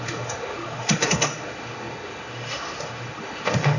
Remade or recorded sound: remade